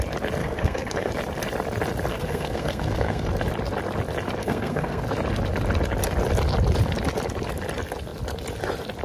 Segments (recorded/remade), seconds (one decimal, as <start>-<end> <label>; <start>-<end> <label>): 0.0-0.4 recorded; 0.4-1.1 remade; 1.1-2.1 recorded; 2.1-3.3 remade; 3.3-4.4 recorded; 4.4-5.0 remade; 5.0-9.0 recorded